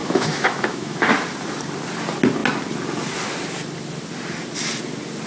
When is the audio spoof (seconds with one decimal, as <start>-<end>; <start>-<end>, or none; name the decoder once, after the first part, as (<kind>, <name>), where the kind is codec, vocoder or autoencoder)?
0.0-1.1 (autoencoder, DAC-VAE)